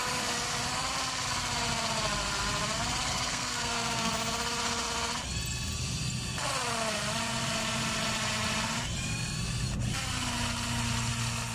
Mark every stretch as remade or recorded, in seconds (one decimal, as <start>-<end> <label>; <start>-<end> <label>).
0.0-3.1 recorded; 3.1-4.1 remade; 4.1-11.5 recorded